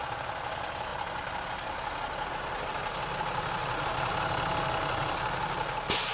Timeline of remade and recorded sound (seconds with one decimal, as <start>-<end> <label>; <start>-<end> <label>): 0.0-6.1 recorded